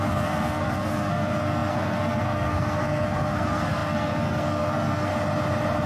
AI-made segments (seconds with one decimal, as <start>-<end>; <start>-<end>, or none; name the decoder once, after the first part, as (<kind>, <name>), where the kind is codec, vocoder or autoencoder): 0.0-5.1 (codec, SNAC)